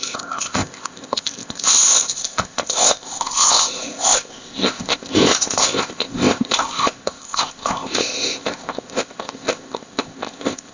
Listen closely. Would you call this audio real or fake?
fake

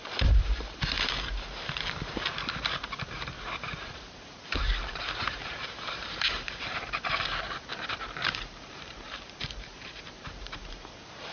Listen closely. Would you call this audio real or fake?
fake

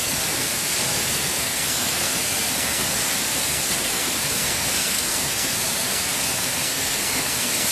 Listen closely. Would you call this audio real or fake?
fake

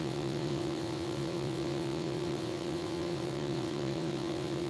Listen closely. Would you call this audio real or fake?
fake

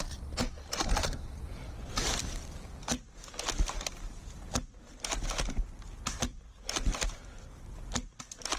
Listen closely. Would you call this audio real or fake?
real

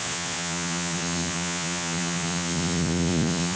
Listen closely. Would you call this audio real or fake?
fake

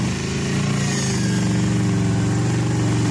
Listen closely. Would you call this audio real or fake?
real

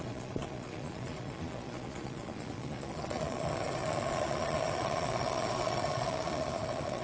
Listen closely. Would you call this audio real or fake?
fake